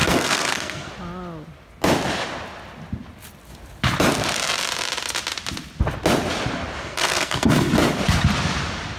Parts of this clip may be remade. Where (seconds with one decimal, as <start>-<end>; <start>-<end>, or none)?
0.0-0.9; 6.8-7.7